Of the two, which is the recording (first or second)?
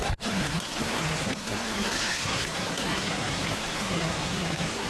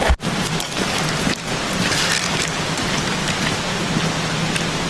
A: second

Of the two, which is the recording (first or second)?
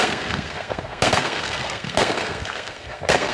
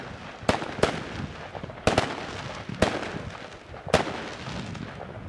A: second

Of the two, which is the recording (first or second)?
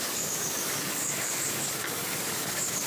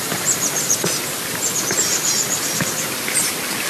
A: second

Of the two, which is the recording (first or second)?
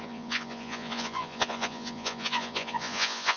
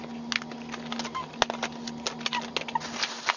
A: second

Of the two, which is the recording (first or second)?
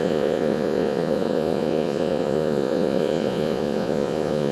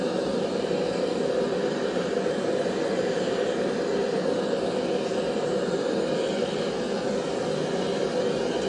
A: second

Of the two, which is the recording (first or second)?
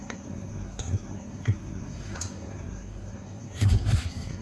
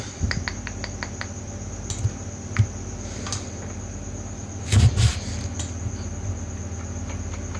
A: second